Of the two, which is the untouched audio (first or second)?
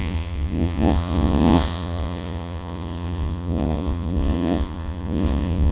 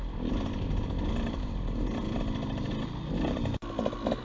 second